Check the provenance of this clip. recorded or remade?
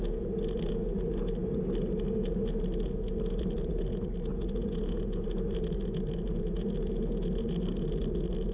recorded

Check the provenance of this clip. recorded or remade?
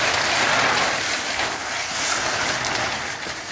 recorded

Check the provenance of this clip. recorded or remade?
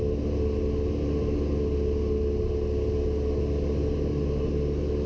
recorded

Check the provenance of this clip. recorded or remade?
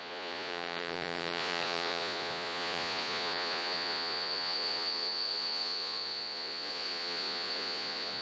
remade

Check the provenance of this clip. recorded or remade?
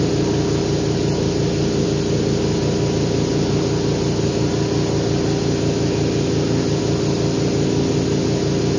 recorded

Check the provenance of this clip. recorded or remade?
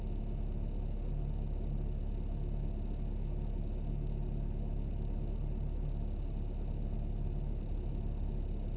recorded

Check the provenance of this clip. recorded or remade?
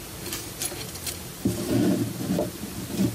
recorded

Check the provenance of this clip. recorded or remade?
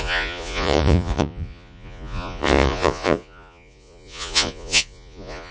remade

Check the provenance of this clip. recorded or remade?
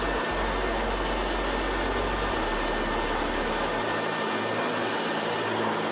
recorded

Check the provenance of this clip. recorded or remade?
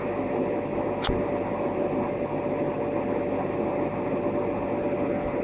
recorded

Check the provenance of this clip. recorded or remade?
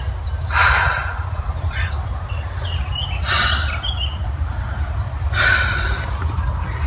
recorded